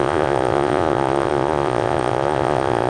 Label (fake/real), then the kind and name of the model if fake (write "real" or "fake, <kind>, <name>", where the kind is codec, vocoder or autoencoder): fake, vocoder, Vocos